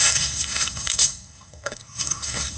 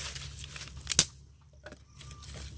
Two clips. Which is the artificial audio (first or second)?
first